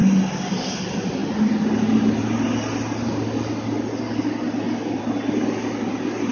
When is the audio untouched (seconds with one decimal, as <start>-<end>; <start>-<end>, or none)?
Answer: 0.0-6.3

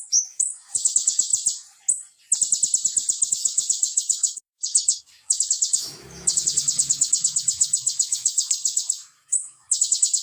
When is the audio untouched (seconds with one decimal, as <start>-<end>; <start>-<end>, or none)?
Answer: 1.3-3.3